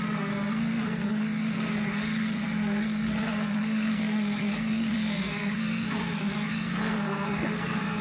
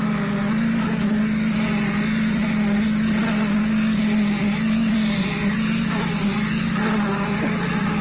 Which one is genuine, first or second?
second